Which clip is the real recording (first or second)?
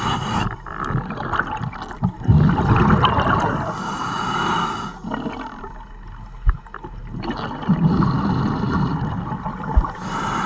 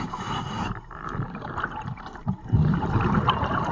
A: first